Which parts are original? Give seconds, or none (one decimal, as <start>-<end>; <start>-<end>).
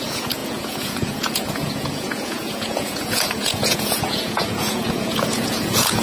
none